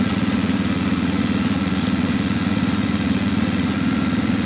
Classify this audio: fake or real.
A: fake